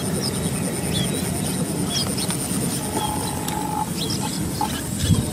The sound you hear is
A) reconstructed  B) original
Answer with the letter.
B